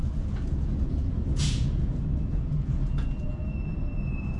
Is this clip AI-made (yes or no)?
yes